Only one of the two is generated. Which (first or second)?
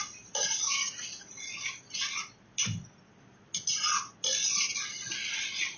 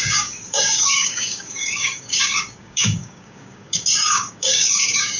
second